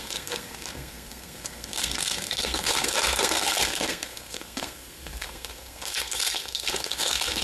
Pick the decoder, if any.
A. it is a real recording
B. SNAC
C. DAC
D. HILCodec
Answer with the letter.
B